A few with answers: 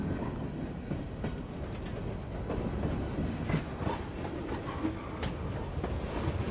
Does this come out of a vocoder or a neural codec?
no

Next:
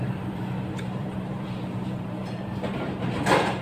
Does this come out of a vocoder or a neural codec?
yes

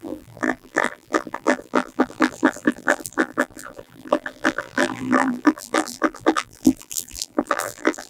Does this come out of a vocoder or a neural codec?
yes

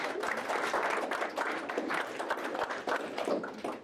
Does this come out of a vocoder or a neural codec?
yes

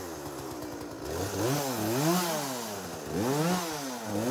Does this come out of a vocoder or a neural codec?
no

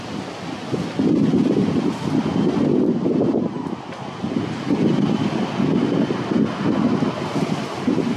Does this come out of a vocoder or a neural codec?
no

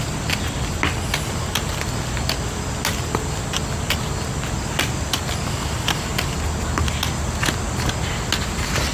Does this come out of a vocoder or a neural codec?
no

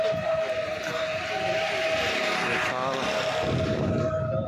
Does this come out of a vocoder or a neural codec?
no